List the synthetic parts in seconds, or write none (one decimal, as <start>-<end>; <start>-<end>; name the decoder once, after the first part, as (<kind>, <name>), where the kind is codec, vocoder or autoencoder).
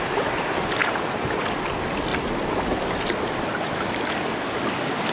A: none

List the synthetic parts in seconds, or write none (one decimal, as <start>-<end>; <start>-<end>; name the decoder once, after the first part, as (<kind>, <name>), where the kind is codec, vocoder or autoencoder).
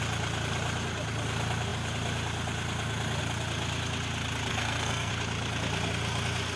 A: 4.5-5.1 (codec, SNAC)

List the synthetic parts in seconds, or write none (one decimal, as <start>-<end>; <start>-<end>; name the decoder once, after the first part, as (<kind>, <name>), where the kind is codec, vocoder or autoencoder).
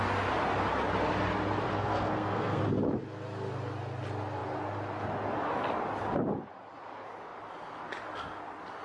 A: 1.7-2.6 (codec, SNAC)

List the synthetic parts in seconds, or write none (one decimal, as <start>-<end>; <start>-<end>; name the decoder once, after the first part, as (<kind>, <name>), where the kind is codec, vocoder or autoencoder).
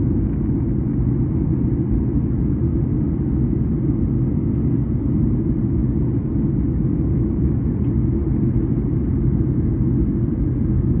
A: none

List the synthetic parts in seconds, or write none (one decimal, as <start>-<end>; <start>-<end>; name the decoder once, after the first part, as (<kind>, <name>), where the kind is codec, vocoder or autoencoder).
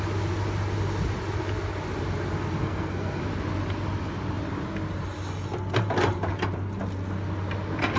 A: 2.6-3.2 (codec, SNAC)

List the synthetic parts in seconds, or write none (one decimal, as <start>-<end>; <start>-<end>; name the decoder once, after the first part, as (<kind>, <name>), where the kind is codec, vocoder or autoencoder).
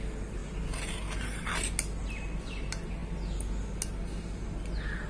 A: none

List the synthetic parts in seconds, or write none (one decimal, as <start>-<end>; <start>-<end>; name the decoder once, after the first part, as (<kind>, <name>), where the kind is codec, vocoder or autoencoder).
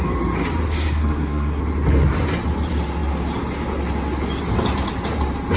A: 0.8-1.6 (codec, SNAC)